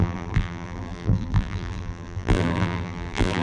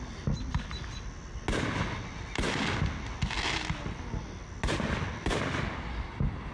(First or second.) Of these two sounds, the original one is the second